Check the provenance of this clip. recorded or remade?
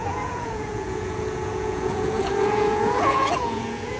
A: remade